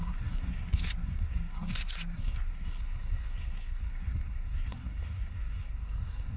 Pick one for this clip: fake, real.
fake